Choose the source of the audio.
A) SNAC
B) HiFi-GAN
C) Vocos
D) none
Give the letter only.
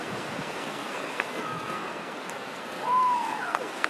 A